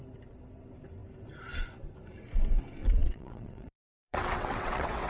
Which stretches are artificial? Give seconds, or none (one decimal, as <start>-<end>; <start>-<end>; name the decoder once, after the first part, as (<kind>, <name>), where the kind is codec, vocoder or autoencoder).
2.8-5.1 (vocoder, WaveNeXt)